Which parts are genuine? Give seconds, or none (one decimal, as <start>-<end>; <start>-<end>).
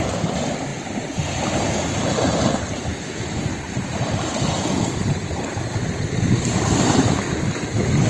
0.0-2.9; 3.4-8.1